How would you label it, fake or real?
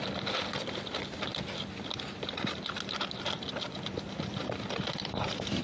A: real